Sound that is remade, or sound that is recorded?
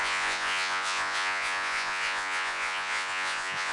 remade